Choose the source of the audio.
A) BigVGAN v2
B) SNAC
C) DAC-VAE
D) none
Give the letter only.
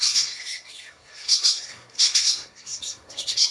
B